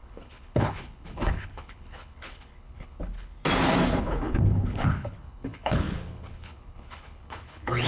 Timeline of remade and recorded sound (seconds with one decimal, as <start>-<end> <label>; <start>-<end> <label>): 0.0-3.4 remade; 3.4-4.0 recorded; 4.0-7.9 remade